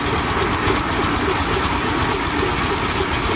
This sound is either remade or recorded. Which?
recorded